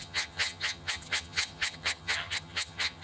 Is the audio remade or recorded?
remade